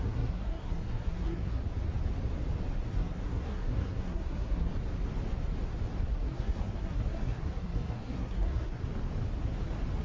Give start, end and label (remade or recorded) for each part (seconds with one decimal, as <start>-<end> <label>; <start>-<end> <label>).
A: 0.0-1.6 remade; 1.6-2.9 recorded; 2.9-4.7 remade; 4.7-6.1 recorded; 6.1-8.8 remade; 8.8-10.0 recorded